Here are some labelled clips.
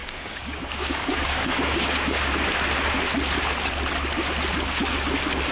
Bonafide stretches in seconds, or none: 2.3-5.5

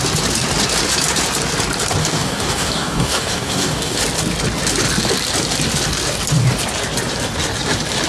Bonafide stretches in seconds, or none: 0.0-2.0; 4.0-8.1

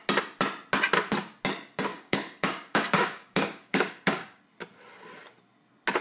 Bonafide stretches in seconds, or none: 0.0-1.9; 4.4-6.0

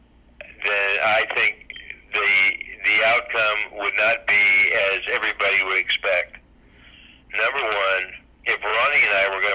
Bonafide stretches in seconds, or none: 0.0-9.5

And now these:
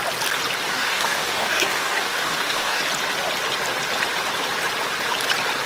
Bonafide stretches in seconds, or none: 0.0-0.7; 2.8-5.7

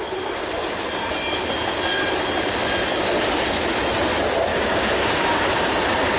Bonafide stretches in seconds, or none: 0.0-4.5; 5.5-6.2

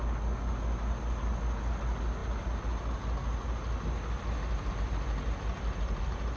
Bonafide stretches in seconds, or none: 0.0-6.4

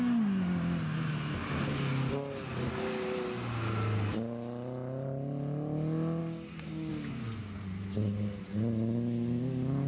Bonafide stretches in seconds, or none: 0.0-6.2; 6.9-9.9